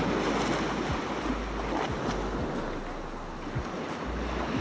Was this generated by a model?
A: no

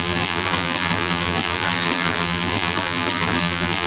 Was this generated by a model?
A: yes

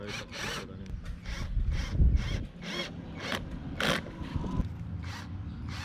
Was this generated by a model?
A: no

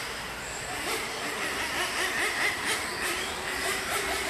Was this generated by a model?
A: yes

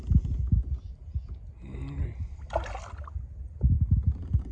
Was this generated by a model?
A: no